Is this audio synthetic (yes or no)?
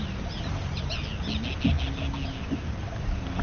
no